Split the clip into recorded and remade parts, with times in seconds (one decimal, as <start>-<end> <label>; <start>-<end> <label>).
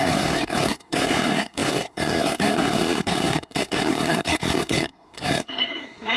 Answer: 0.0-6.2 remade